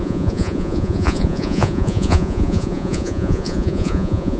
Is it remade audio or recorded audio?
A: remade